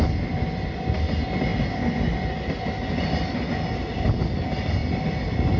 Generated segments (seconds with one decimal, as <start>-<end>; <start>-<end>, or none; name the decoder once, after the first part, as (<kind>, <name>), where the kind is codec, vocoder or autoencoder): none